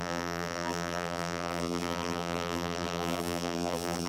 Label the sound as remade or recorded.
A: remade